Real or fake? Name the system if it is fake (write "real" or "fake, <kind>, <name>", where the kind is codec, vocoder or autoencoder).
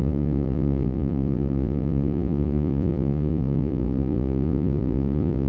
fake, vocoder, Vocos